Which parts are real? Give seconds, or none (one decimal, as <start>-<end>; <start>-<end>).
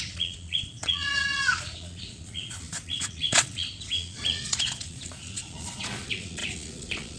none